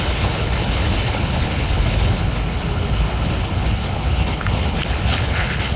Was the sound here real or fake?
fake